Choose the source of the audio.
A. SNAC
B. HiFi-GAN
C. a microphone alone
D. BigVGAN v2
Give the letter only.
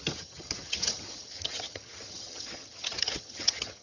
B